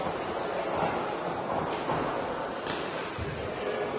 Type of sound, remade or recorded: recorded